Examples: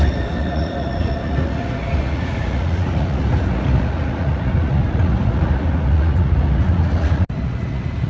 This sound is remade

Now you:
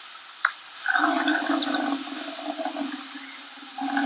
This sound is recorded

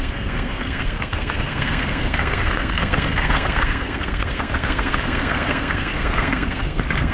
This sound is remade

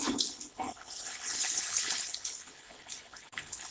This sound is remade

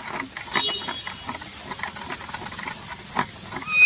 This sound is recorded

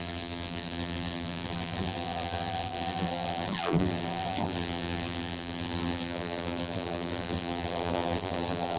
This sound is remade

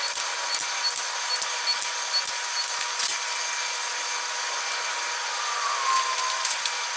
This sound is recorded